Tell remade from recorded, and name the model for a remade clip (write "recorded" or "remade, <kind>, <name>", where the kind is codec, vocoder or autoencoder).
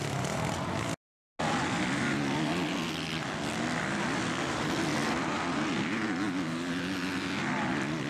recorded